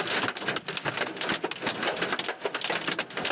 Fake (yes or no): no